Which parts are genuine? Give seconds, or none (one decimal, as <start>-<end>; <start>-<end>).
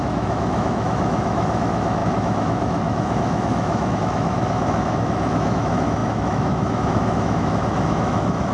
none